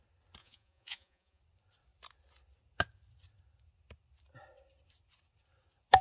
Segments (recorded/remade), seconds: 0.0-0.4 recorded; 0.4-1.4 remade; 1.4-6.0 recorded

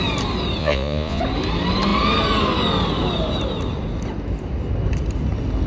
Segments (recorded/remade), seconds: 0.0-0.6 recorded; 0.6-1.2 remade; 1.2-5.7 recorded